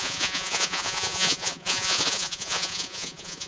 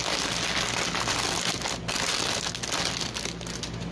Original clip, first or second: second